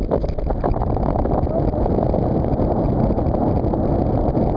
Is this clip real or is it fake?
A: real